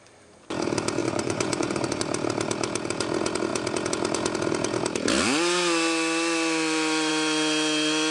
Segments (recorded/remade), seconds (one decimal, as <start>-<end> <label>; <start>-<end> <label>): 0.0-1.0 recorded; 1.0-2.0 remade; 2.0-8.1 recorded